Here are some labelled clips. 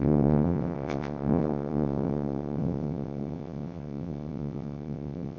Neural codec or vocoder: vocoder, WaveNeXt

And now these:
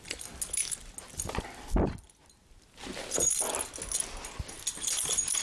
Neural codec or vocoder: none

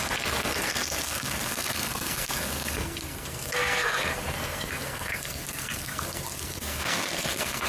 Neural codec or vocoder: codec, SNAC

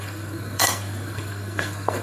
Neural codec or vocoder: codec, SNAC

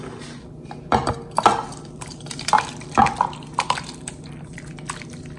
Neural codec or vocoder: none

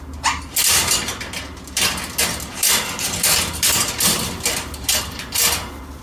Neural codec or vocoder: none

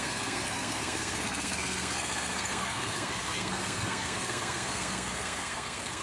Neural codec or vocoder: codec, SNAC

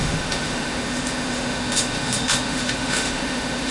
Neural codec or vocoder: autoencoder, DAC-VAE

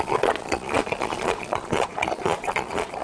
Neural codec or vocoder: vocoder, Vocos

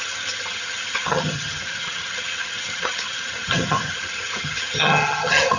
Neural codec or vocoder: vocoder, HiFi-GAN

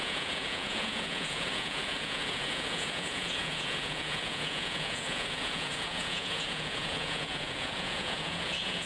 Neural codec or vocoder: vocoder, Vocos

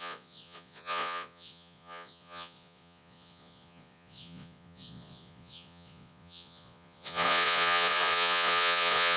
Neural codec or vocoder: vocoder, Vocos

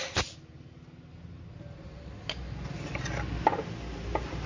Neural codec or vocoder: none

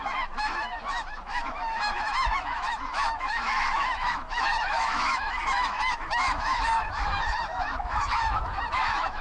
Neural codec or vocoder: autoencoder, DAC-VAE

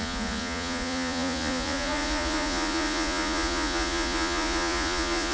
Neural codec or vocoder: vocoder, Vocos